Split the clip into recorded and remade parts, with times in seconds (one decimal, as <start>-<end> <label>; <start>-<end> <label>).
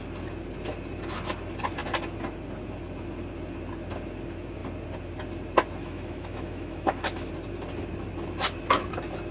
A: 0.0-5.8 recorded; 5.8-7.3 remade; 7.3-9.3 recorded